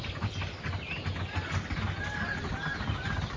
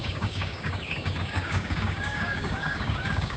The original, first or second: first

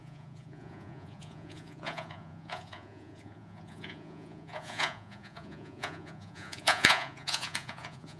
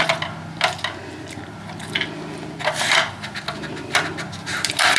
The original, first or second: second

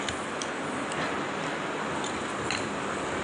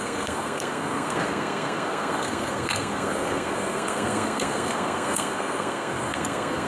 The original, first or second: first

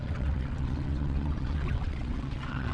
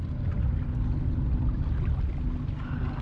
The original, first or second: second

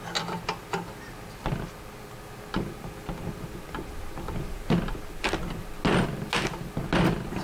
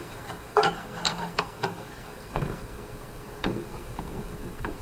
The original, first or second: first